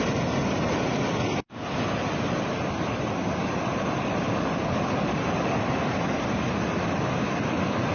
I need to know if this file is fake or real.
real